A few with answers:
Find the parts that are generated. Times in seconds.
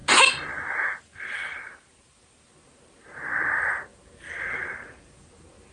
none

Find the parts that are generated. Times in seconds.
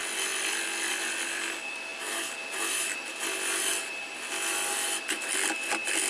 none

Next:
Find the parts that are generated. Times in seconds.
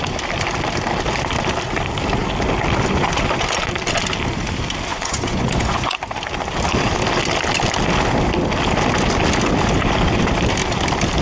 4.9-6.0 (vocoder, Vocos)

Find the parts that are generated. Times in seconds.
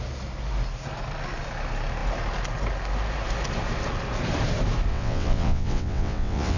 4.9-6.6 (vocoder, WaveNeXt)